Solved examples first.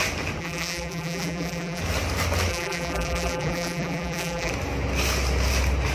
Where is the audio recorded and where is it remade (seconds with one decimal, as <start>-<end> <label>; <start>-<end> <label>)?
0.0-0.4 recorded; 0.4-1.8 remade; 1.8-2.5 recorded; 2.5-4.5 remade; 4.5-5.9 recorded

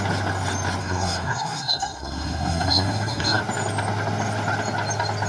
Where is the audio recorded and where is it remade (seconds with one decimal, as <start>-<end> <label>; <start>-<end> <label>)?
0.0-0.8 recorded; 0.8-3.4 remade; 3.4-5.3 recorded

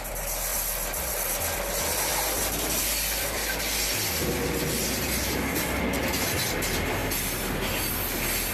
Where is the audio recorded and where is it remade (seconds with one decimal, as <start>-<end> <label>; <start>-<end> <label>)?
0.0-2.1 recorded; 2.1-2.8 remade; 2.8-8.5 recorded

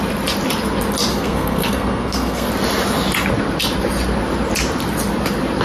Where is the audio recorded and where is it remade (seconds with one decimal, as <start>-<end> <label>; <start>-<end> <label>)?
0.0-1.1 recorded; 1.1-2.5 remade; 2.5-5.6 recorded